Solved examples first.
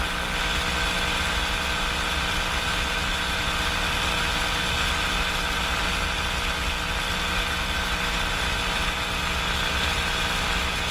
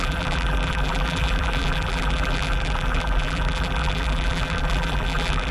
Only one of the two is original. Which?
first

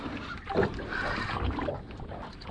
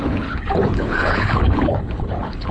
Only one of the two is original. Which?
first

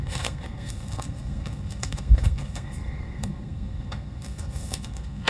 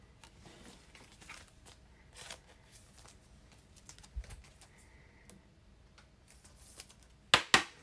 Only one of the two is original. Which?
second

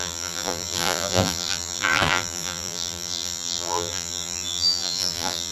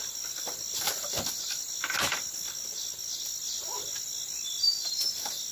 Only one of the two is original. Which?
second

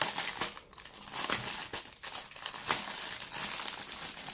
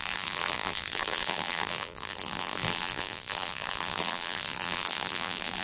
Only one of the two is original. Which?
first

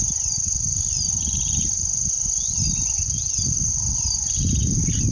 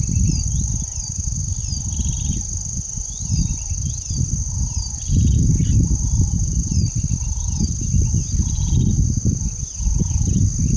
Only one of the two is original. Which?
second